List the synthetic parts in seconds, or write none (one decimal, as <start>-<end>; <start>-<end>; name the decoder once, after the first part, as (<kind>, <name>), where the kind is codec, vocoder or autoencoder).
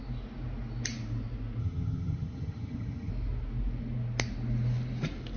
1.6-3.1 (vocoder, HiFi-GAN)